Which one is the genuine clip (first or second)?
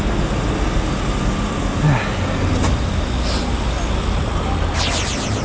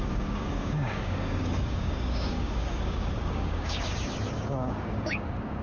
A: first